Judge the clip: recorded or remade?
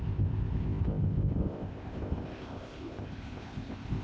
remade